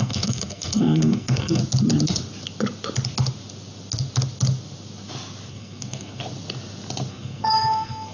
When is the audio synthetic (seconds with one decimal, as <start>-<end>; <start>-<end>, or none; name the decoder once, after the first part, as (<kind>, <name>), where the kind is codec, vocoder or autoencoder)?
0.0-1.6 (codec, SNAC); 5.5-6.2; 7.1-8.1

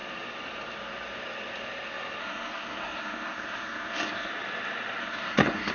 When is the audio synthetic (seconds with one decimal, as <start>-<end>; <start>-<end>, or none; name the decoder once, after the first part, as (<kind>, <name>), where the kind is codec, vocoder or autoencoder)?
2.2-4.3 (codec, SNAC); 5.0-5.7